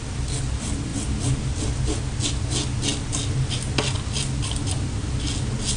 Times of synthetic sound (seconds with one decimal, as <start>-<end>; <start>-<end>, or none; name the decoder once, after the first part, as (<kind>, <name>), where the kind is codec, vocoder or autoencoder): none